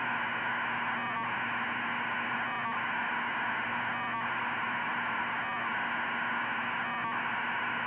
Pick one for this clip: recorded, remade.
recorded